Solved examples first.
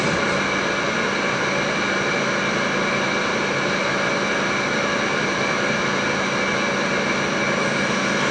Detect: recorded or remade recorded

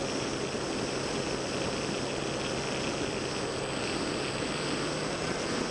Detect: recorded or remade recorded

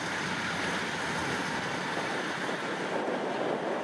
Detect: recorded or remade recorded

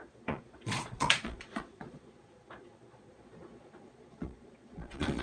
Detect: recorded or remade remade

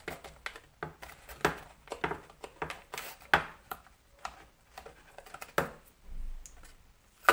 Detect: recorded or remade recorded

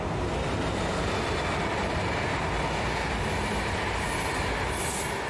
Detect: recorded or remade recorded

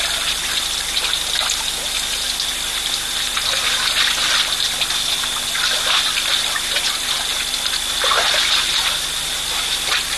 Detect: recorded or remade recorded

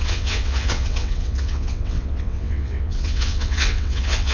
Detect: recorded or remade remade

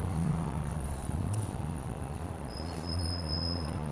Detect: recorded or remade remade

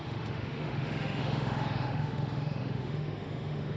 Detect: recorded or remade remade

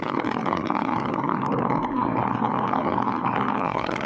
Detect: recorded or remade remade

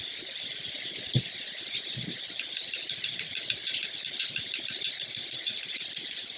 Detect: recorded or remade remade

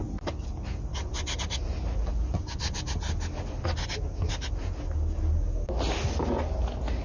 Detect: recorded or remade recorded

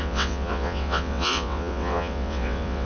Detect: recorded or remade remade